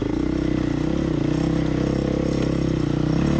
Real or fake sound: real